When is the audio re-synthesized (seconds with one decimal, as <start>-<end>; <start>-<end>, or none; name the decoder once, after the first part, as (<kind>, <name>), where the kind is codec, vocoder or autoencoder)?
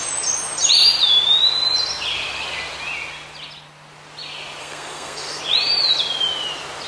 4.6-5.4 (codec, SNAC)